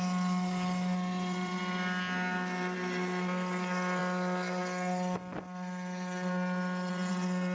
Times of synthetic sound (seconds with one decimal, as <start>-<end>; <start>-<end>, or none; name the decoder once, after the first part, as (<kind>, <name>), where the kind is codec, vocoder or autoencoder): none